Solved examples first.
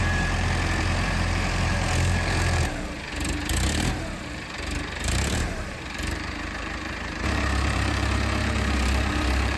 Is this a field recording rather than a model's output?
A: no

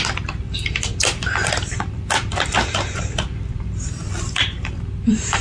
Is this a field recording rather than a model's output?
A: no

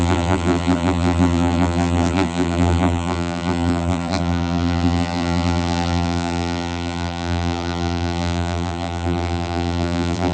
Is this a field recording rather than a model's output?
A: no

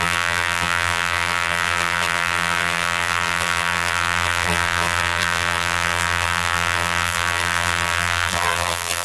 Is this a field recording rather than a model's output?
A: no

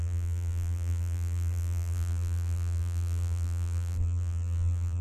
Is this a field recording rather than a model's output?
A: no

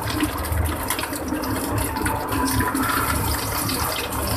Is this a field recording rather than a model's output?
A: no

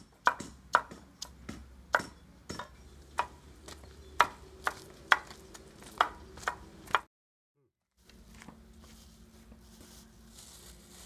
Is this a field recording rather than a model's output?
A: yes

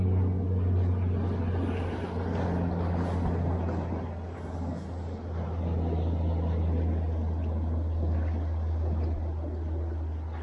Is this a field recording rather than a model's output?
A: yes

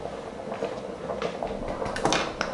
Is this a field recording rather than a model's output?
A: yes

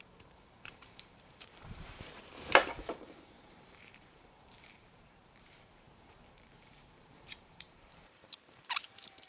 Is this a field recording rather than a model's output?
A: no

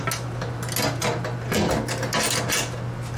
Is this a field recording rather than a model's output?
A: yes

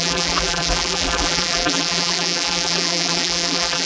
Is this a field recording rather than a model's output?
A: no